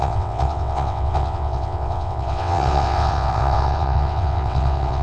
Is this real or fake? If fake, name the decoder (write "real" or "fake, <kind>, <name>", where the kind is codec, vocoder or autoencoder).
fake, vocoder, WaveNeXt